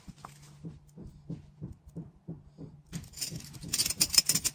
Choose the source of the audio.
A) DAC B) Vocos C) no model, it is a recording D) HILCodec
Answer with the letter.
C